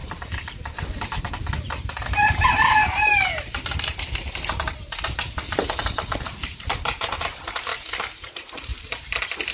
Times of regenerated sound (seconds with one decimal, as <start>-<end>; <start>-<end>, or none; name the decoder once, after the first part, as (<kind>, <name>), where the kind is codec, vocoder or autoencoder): 0.0-2.8 (vocoder, BigVGAN v2); 6.7-7.7; 8.2-8.7